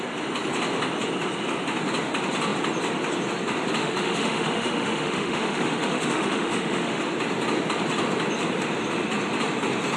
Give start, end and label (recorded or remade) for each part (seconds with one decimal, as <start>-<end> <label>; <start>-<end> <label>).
0.0-3.8 recorded; 3.8-7.0 remade; 7.0-10.0 recorded